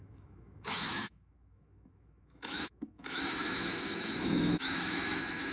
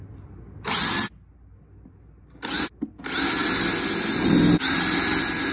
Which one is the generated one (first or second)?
first